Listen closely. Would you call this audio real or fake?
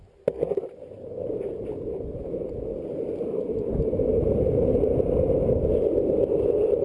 real